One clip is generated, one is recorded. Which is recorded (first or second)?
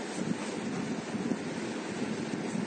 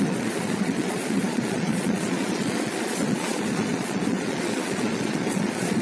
first